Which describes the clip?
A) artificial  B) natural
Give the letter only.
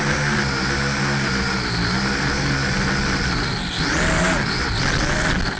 B